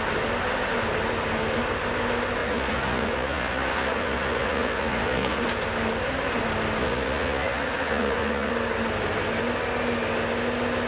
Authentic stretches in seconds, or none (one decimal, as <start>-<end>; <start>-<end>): 0.0-2.4; 5.4-6.8; 8.5-10.9